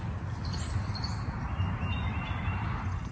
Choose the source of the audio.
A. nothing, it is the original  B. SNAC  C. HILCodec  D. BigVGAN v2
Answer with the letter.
A